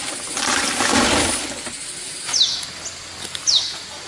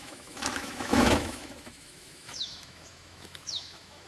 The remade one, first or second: second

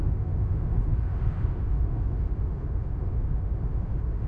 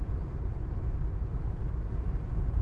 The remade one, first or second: first